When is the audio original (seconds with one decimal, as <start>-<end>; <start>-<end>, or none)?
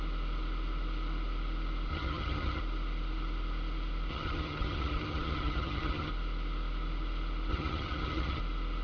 0.0-1.9; 2.6-4.1; 6.1-7.5; 8.4-8.8